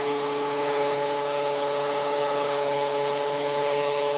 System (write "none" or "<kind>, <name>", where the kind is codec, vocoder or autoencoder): codec, HILCodec